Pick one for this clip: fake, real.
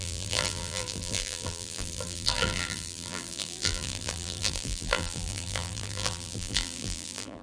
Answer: fake